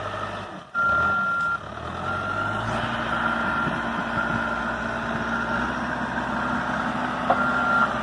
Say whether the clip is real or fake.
real